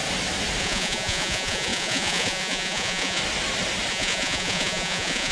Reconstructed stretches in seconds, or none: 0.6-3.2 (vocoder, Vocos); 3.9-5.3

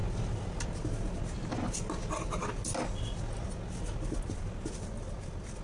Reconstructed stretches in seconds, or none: none

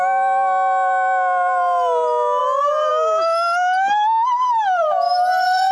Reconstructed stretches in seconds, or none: 2.4-2.9 (vocoder, BigVGAN v2); 4.8-5.7

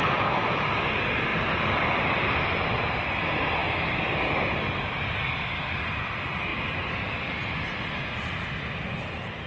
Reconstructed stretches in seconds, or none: 1.3-2.9 (vocoder, BigVGAN v2); 6.5-7.4

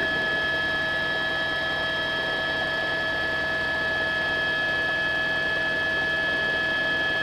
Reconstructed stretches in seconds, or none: none

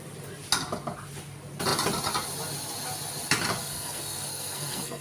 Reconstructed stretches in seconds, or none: 3.6-5.0 (codec, SNAC)

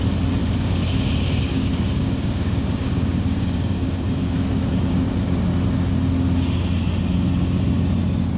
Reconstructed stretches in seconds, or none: 1.5-5.1 (codec, DAC)

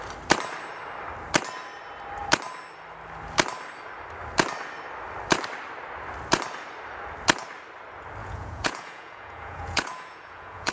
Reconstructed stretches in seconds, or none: 8.2-10.7 (vocoder, Vocos)